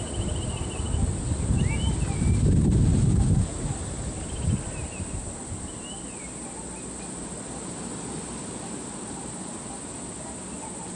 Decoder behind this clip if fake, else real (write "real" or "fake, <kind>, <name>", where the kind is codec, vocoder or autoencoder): real